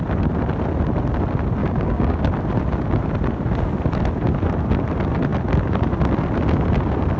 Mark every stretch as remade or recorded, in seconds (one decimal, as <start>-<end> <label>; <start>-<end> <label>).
0.0-1.6 recorded; 1.6-2.2 remade; 2.2-7.2 recorded